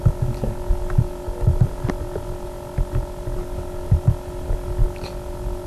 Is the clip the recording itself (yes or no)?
yes